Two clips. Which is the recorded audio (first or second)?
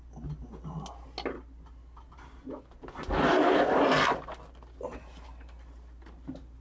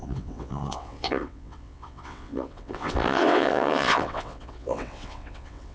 first